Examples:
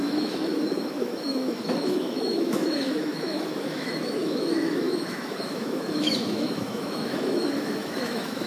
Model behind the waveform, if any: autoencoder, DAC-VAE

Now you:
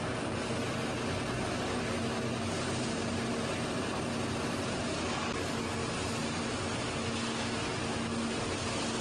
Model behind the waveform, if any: none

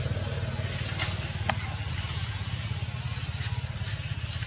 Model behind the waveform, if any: none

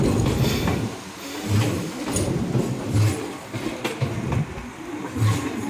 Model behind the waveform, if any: none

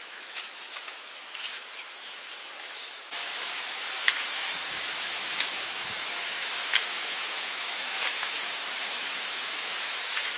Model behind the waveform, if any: autoencoder, DAC-VAE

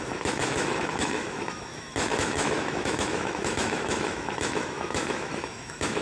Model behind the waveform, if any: autoencoder, DAC-VAE